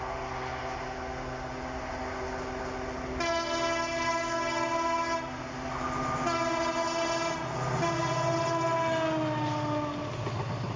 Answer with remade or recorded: recorded